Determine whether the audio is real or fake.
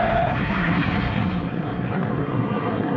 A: fake